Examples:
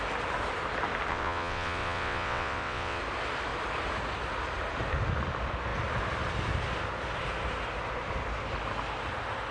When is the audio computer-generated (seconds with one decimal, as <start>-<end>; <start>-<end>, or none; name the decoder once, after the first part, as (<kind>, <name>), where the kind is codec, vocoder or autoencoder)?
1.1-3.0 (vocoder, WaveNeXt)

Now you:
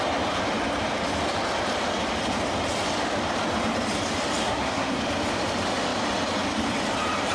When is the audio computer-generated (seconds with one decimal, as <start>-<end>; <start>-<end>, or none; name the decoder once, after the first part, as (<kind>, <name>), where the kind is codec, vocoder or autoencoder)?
4.4-5.0 (codec, SNAC)

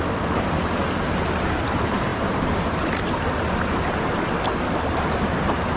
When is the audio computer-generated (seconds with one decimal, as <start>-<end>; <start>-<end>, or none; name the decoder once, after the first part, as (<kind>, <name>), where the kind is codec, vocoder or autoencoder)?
none